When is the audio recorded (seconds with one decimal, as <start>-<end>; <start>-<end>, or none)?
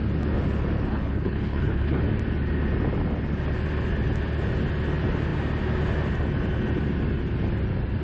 0.0-0.9; 2.0-8.0